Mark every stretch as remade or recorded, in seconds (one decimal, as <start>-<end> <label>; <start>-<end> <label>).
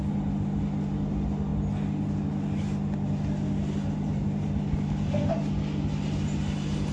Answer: 0.0-6.9 recorded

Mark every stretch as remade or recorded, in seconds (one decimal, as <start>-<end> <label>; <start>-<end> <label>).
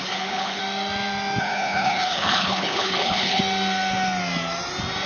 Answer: 0.0-0.6 remade; 0.6-1.4 recorded; 1.4-3.4 remade; 3.4-5.1 recorded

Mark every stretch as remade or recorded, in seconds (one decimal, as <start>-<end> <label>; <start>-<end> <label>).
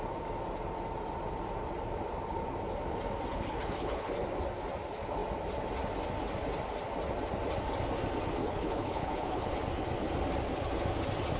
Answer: 0.0-3.3 recorded; 3.3-4.1 remade; 4.1-8.4 recorded; 8.4-9.6 remade; 9.6-11.4 recorded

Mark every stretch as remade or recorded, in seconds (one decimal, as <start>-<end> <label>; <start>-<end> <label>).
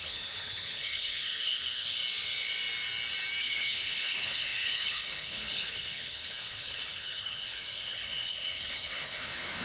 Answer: 0.0-2.0 remade; 2.0-3.4 recorded; 3.4-9.6 remade